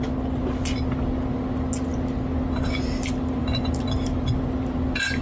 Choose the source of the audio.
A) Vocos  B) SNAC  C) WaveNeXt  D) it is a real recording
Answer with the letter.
D